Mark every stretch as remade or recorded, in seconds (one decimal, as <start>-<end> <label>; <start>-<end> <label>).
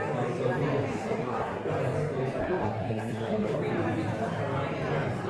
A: 0.0-0.9 recorded; 0.9-1.7 remade; 1.7-2.4 recorded; 2.4-3.6 remade; 3.6-5.3 recorded